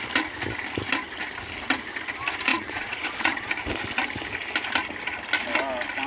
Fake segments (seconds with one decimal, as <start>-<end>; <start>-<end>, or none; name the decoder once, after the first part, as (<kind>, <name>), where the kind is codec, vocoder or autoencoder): 2.5-3.5 (vocoder, Vocos)